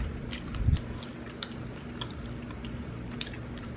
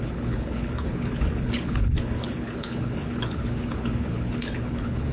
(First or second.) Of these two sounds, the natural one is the first